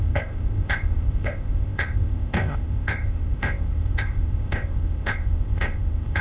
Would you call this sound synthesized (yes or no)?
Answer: yes